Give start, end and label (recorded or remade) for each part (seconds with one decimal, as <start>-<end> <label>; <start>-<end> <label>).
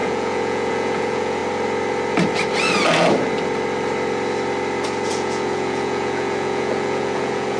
0.0-1.4 remade; 1.4-5.1 recorded; 5.1-7.6 remade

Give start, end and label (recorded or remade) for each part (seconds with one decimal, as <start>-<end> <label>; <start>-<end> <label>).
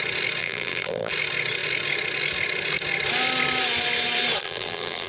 0.0-0.4 recorded; 0.4-1.1 remade; 1.1-4.4 recorded; 4.4-5.1 remade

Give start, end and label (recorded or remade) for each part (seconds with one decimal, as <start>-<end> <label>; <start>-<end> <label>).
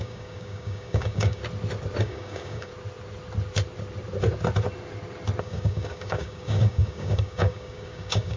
0.0-1.4 remade; 1.4-2.0 recorded; 2.0-2.7 remade; 2.7-5.4 recorded; 5.4-8.4 remade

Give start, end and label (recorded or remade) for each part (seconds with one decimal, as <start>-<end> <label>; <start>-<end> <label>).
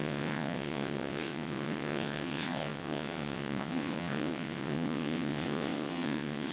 0.0-6.5 remade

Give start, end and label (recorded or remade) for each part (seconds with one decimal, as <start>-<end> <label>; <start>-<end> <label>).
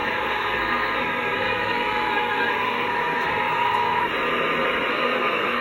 0.0-4.1 remade; 4.1-4.9 recorded; 4.9-5.6 remade